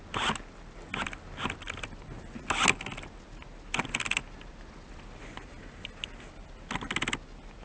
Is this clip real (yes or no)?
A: yes